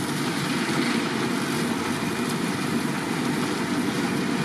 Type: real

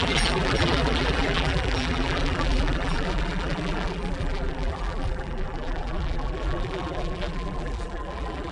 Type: fake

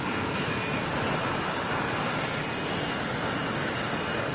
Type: real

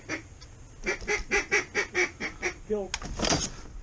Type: real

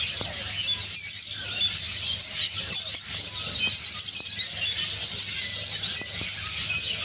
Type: real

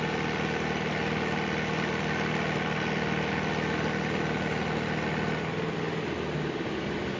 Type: real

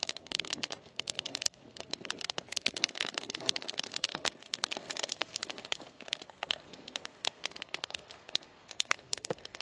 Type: fake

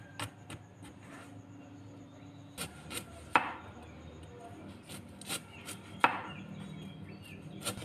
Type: real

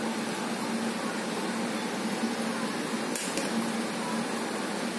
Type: real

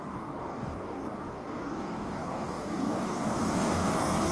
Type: fake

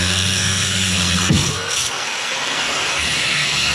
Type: fake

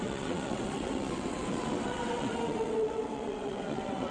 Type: fake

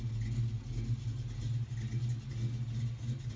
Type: real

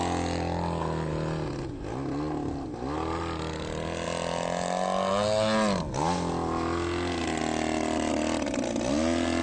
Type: real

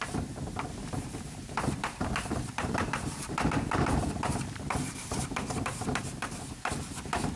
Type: fake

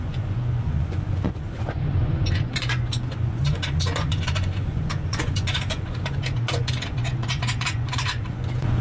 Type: fake